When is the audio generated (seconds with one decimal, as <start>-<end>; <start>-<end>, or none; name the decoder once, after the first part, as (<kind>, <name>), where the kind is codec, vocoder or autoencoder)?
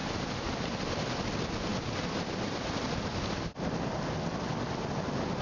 0.0-0.8 (vocoder, BigVGAN v2)